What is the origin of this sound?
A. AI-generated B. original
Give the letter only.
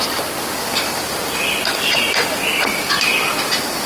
B